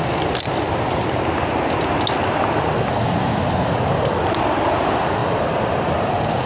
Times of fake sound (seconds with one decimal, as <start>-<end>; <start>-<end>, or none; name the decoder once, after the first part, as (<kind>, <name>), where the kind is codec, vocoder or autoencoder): none